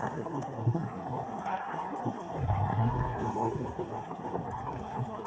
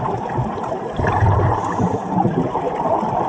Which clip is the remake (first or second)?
first